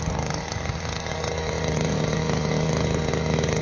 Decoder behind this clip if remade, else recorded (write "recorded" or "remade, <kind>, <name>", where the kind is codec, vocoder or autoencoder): remade, codec, DAC